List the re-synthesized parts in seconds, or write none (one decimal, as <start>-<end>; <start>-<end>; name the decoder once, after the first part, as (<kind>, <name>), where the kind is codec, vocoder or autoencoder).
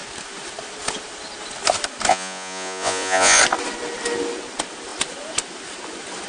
2.1-3.4 (vocoder, Vocos)